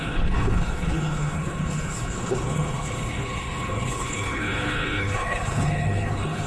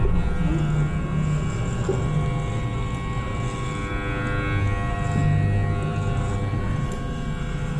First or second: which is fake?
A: first